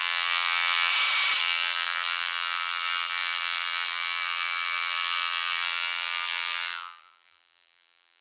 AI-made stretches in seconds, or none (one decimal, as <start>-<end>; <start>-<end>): 0.0-0.9; 1.4-8.2